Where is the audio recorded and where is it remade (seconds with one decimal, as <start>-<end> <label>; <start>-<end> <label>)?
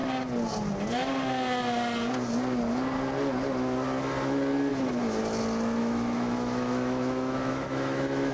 0.0-4.7 recorded; 4.7-5.2 remade; 5.2-5.8 recorded; 5.8-8.3 remade